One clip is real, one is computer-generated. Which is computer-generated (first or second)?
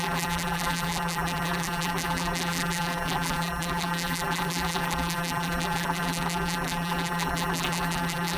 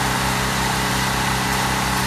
first